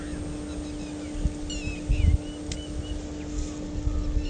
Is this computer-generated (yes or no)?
no